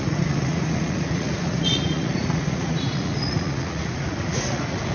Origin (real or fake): fake